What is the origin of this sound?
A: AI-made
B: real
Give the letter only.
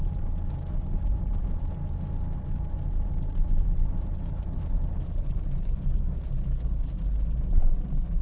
B